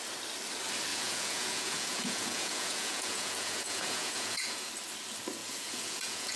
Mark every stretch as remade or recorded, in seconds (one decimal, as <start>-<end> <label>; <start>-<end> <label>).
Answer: 0.0-0.9 recorded; 0.9-4.7 remade; 4.7-5.4 recorded; 5.4-6.4 remade